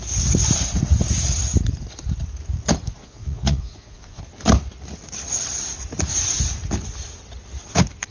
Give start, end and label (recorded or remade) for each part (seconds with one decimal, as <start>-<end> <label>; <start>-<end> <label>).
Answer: 0.0-3.0 recorded; 3.0-4.2 remade; 4.2-8.1 recorded